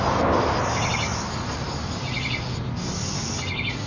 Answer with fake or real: real